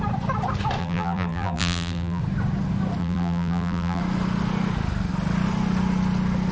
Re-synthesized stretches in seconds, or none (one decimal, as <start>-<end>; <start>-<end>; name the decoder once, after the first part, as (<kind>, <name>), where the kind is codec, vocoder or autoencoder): 0.8-2.2 (vocoder, BigVGAN v2); 3.0-4.0